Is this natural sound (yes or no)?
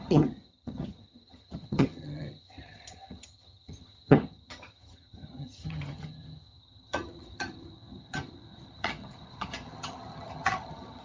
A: no